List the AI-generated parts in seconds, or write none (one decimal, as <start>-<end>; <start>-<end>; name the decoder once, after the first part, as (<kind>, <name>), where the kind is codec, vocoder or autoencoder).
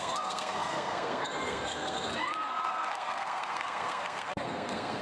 0.0-5.0 (codec, SNAC)